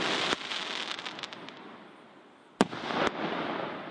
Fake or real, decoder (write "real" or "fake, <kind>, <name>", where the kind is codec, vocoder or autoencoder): real